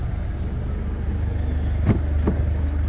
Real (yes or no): yes